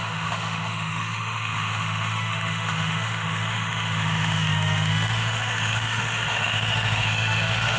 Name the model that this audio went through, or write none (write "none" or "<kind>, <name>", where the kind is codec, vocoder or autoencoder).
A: autoencoder, DAC-VAE